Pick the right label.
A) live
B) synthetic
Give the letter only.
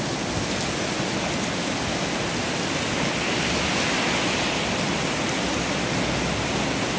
A